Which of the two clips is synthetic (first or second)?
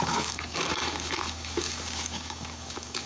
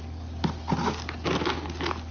first